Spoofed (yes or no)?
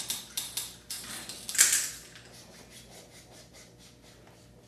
no